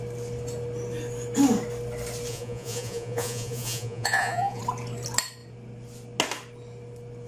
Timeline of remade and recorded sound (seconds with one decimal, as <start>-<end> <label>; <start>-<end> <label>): 0.0-2.3 recorded; 2.3-4.6 remade; 4.6-7.3 recorded